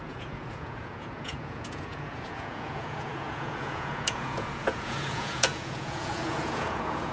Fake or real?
fake